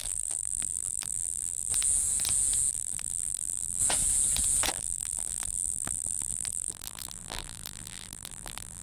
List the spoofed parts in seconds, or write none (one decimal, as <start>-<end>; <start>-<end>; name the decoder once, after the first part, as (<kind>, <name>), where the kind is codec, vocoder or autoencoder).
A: 0.0-1.7 (vocoder, BigVGAN v2); 2.7-3.8; 4.7-8.8